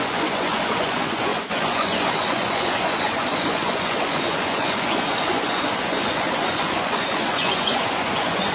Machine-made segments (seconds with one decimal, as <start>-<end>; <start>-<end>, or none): 0.0-8.5